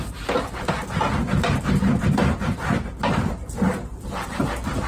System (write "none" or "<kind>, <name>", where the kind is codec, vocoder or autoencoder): vocoder, BigVGAN v2